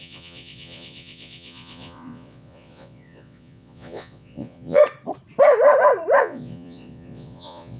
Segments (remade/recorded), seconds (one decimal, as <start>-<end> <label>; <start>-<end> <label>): 0.0-4.8 remade; 4.8-6.2 recorded; 6.2-7.8 remade